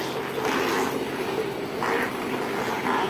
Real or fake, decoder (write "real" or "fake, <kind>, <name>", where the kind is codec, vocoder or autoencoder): real